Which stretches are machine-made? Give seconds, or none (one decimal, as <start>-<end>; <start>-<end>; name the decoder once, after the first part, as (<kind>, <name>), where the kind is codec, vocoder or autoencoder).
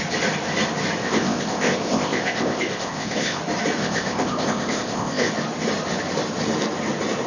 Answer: 1.0-3.4 (codec, ZipCodec); 3.8-5.3